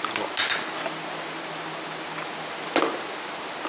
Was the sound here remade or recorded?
recorded